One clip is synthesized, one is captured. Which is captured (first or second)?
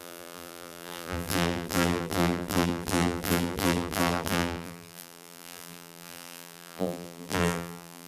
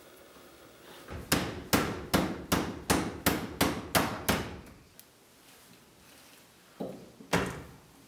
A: second